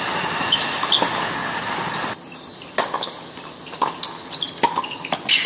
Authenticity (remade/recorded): recorded